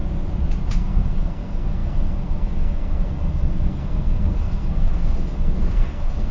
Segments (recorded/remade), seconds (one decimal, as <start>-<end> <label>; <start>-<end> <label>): 0.0-0.7 recorded; 0.7-6.3 remade

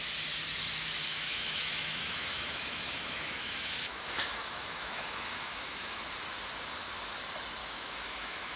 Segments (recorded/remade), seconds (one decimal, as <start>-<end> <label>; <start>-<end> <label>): 0.0-1.1 recorded; 1.1-6.0 remade; 6.0-7.6 recorded; 7.6-8.6 remade